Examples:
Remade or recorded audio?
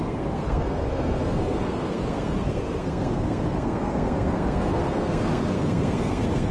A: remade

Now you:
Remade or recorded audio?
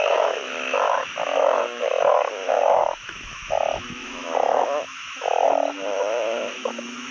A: remade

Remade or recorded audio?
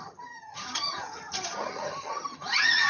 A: remade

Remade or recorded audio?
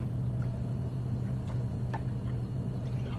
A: recorded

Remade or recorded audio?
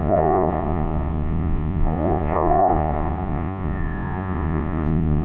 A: remade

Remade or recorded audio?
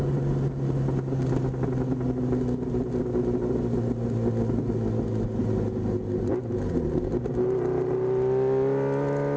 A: recorded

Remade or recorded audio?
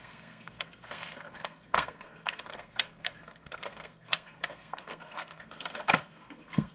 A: remade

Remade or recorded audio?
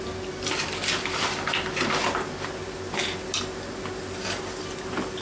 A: recorded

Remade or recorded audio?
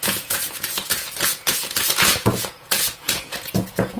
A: remade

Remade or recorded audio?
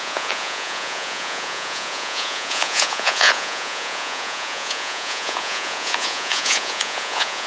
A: remade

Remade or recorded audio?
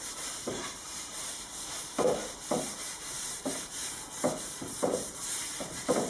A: remade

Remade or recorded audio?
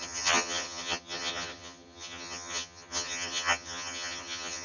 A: remade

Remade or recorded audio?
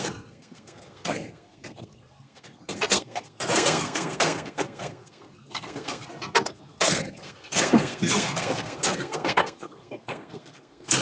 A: remade